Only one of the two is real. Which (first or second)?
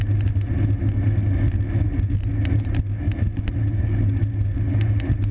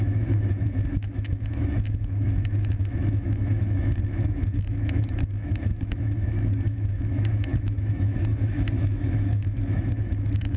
first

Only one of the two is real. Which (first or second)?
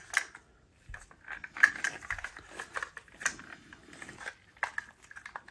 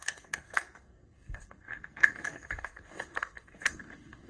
first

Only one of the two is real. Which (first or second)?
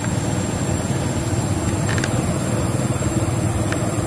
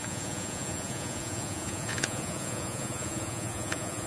first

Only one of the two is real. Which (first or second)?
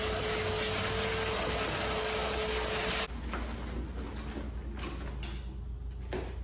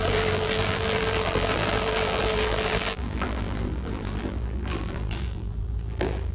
first